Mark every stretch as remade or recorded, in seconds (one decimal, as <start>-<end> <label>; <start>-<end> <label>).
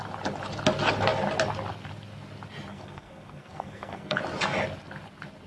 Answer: 0.0-2.7 recorded; 2.7-4.2 remade; 4.2-5.5 recorded